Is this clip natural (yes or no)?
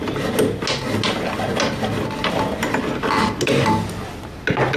yes